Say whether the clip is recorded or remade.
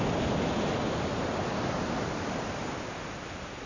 recorded